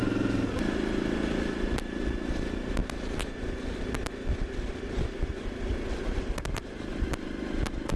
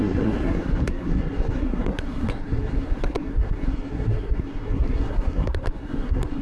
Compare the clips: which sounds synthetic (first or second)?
second